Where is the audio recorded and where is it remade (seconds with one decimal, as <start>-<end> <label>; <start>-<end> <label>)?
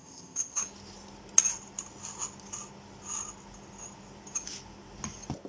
0.0-0.6 remade; 0.6-5.5 recorded